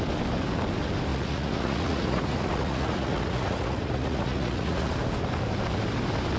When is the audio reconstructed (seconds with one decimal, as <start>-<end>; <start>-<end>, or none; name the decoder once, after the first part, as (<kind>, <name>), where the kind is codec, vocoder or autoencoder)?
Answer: 1.1-4.9 (vocoder, Vocos)